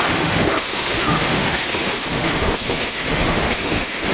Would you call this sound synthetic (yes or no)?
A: yes